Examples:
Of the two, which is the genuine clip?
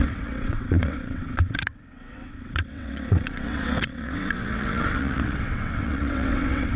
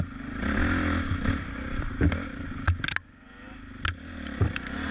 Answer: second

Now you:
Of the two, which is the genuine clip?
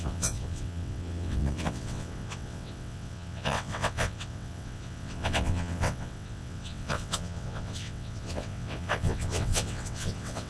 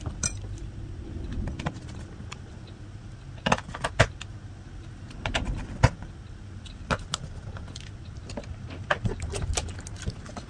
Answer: second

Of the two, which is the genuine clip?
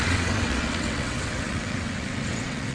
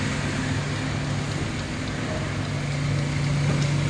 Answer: second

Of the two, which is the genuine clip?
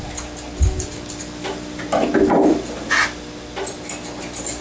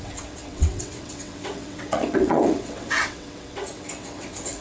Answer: first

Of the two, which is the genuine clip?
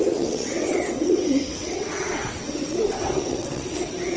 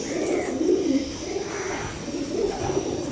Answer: second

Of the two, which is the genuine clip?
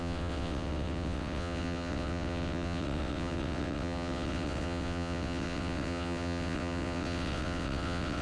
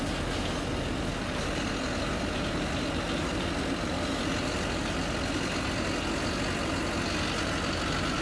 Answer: second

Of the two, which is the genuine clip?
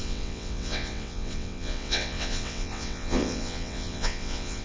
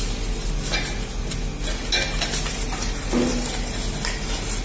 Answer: second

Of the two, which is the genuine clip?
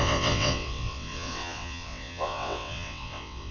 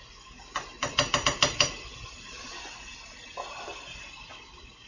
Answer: second